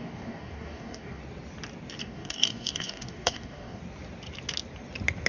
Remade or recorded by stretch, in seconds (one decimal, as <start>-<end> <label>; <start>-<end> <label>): 0.0-1.2 remade; 1.2-2.0 recorded; 2.0-3.8 remade; 3.8-5.3 recorded